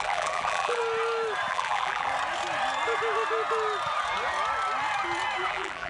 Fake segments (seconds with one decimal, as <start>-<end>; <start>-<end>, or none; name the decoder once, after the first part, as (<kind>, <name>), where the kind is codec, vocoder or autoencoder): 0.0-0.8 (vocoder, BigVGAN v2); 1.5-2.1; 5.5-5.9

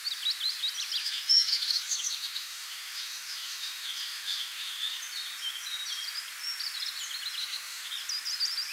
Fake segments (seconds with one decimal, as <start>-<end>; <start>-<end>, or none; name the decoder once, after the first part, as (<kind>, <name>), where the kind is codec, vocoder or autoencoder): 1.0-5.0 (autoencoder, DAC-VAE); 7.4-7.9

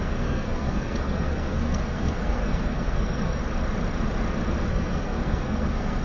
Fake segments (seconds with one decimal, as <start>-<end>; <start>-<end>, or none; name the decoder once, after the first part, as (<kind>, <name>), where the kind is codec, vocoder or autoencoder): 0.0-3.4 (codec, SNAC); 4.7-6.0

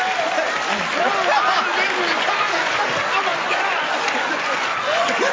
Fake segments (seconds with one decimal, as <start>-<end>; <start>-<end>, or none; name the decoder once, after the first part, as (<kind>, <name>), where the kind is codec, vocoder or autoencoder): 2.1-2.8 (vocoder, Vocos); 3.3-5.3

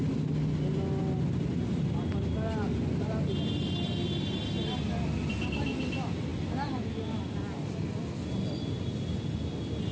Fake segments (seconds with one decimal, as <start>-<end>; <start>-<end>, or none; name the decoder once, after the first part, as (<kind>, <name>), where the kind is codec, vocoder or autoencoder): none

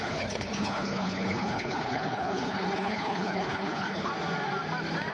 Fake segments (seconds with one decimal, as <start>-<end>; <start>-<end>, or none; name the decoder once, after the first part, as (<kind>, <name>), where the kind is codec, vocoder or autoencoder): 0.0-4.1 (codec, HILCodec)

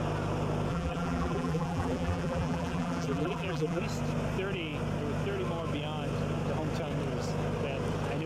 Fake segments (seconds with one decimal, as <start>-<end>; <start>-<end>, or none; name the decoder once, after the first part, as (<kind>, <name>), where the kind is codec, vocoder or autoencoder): 0.7-3.8 (vocoder, BigVGAN v2)